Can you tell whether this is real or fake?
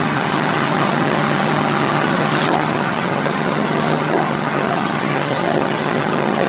fake